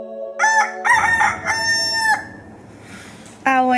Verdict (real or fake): real